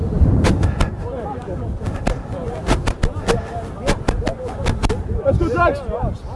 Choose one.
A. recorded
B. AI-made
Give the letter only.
A